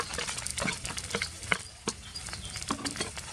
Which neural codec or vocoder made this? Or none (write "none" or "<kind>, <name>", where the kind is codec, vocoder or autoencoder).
none